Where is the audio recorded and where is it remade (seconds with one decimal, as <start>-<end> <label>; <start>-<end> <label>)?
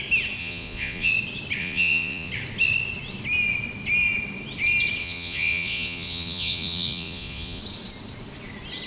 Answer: 0.0-0.4 recorded; 0.4-1.1 remade; 1.1-1.6 recorded; 1.6-2.3 remade; 2.3-5.0 recorded; 5.0-7.6 remade; 7.6-8.9 recorded